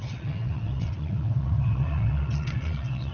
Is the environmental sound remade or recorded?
remade